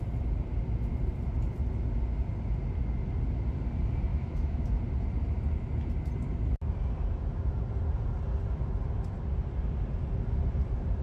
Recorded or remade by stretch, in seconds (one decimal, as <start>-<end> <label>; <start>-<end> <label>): 0.0-4.1 recorded; 4.1-4.8 remade; 4.8-11.0 recorded